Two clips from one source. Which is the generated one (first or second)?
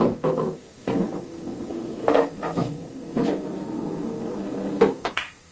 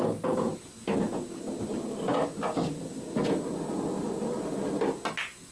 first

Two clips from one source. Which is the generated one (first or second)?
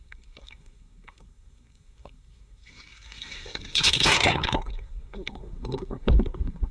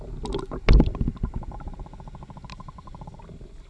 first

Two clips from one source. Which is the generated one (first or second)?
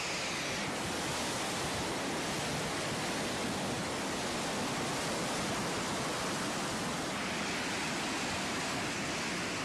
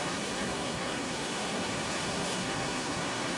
second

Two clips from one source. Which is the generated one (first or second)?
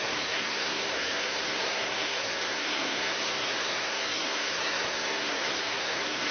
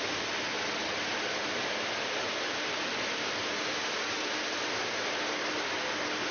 first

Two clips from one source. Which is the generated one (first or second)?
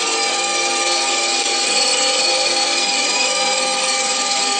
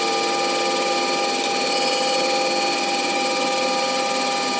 first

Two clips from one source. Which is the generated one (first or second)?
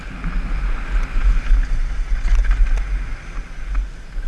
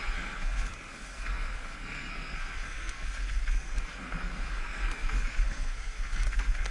second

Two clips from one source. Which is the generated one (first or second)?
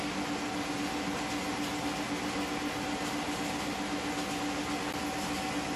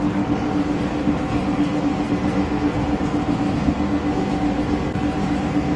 second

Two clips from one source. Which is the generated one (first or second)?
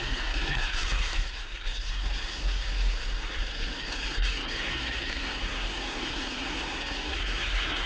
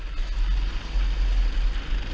first